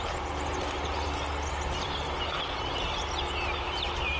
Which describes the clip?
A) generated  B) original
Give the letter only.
B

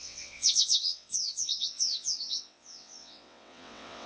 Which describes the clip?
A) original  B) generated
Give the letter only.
B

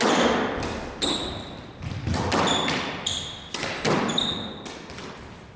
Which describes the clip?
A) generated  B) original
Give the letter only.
B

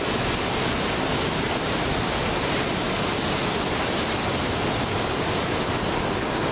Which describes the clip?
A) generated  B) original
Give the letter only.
B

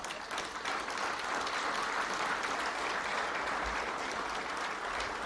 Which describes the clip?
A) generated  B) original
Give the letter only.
B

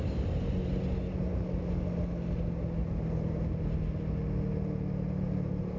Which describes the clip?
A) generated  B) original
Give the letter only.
B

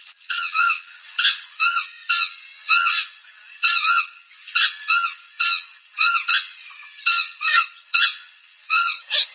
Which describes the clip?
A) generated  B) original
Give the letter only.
A